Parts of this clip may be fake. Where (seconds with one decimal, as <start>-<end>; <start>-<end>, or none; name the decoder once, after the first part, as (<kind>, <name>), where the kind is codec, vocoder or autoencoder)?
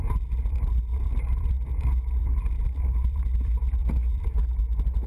0.9-1.7 (vocoder, BigVGAN v2); 2.2-4.6